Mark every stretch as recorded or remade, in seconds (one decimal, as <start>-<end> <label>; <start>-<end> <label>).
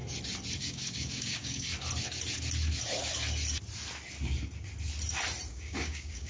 0.0-0.6 recorded; 0.6-1.7 remade; 1.7-5.5 recorded; 5.5-6.3 remade